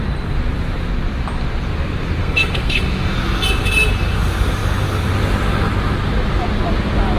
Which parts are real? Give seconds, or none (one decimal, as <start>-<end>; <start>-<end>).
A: 0.0-2.2; 2.8-7.2